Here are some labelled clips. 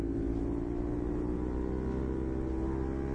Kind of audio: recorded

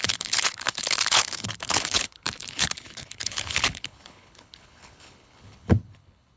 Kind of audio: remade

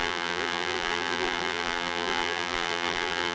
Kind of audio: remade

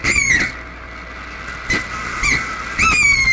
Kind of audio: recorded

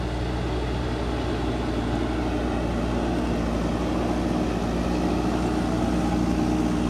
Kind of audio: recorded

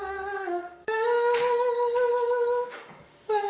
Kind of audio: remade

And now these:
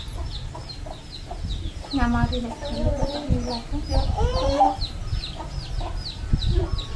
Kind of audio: recorded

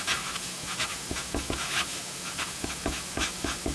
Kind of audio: remade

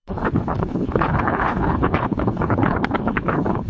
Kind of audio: remade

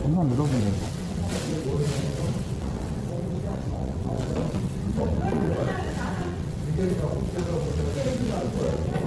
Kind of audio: remade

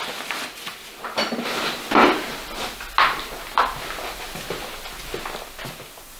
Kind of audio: recorded